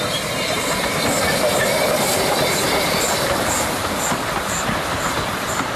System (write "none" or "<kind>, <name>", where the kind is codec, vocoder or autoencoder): vocoder, BigVGAN v2